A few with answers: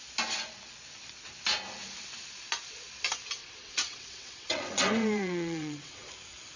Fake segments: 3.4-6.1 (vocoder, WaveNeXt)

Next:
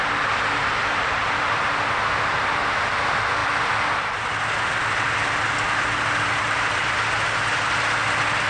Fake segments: 0.6-1.5 (vocoder, BigVGAN v2); 3.4-4.1

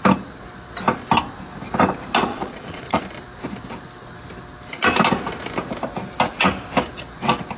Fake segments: 2.3-3.0 (vocoder, Vocos)

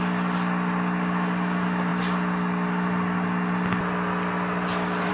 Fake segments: none

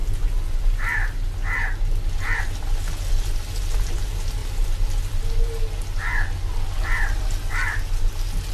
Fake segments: none